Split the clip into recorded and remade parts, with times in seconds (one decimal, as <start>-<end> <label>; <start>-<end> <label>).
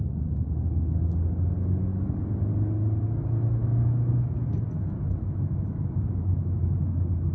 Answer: 0.0-3.6 recorded; 3.6-6.6 remade; 6.6-7.3 recorded